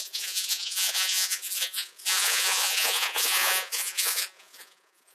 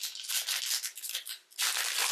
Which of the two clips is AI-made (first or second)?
first